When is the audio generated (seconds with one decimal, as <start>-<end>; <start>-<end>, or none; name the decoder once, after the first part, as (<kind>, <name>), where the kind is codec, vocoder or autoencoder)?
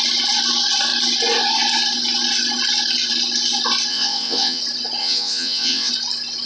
3.9-4.6 (vocoder, WaveNeXt); 5.0-5.9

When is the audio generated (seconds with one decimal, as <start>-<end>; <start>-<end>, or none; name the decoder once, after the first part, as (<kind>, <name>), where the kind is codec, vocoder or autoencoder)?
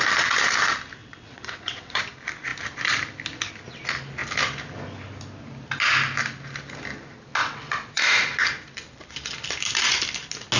1.0-2.0 (vocoder, WaveNeXt); 7.4-8.0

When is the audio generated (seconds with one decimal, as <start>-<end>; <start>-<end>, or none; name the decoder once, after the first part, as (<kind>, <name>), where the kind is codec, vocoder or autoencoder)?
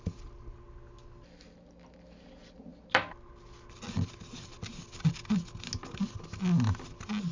none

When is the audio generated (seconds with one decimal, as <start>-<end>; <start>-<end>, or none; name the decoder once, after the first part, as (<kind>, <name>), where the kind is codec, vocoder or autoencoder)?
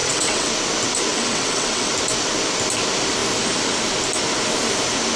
0.0-0.5 (vocoder, WaveNeXt); 1.1-1.9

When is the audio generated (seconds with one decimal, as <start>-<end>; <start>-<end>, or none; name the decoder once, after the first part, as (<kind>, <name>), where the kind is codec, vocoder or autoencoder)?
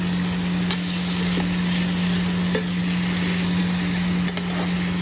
none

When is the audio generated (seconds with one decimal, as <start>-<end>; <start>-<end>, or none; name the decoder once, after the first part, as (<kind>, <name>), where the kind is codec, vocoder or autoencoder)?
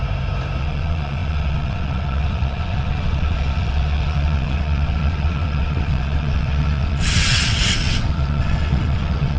0.6-9.4 (vocoder, WaveNeXt)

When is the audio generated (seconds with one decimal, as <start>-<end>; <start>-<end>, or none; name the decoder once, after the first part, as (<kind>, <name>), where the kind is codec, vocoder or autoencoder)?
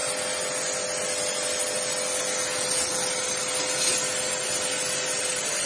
none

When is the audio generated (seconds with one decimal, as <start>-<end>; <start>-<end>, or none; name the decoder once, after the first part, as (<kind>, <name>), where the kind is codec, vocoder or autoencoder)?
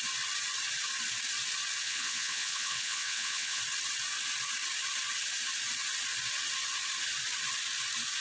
1.8-3.6 (vocoder, WaveNeXt)